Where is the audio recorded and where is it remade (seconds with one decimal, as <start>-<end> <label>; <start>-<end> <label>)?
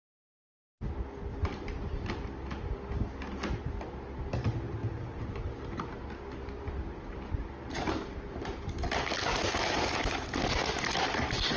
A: 0.0-1.3 recorded; 1.3-2.1 remade; 2.1-4.8 recorded; 4.8-8.6 remade; 8.6-11.6 recorded